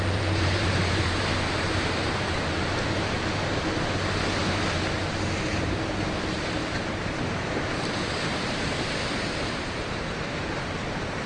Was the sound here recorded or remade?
remade